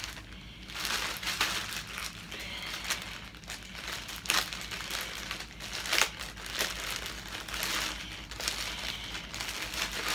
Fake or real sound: real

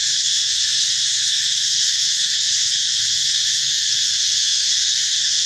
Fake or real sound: fake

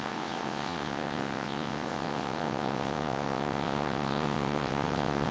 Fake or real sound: fake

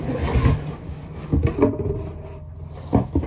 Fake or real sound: real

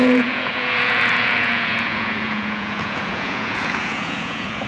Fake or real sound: fake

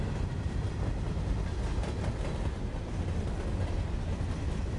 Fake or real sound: real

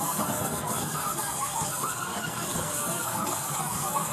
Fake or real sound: fake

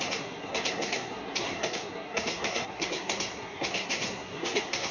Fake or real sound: fake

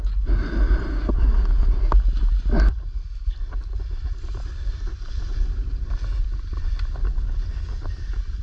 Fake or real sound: real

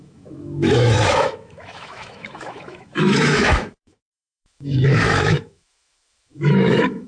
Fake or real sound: fake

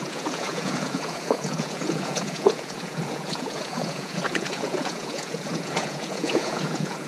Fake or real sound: fake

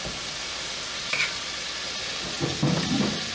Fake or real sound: real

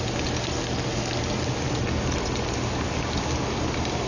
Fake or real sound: real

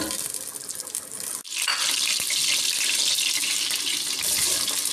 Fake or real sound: real